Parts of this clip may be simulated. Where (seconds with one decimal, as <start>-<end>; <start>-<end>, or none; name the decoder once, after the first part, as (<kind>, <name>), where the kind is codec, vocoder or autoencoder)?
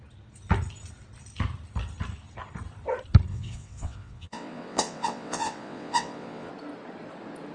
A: 3.3-6.5 (vocoder, WaveNeXt)